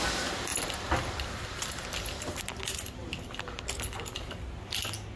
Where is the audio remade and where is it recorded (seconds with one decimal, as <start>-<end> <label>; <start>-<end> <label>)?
0.0-5.2 recorded